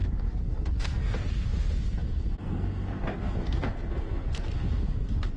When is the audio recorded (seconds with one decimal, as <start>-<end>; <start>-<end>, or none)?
none